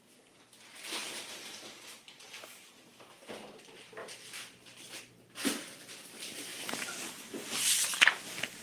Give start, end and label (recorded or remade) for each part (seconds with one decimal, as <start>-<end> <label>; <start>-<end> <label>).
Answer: 0.0-1.0 recorded; 1.0-3.0 remade; 3.0-4.0 recorded; 4.0-5.0 remade; 5.0-6.5 recorded; 6.5-7.3 remade; 7.3-8.6 recorded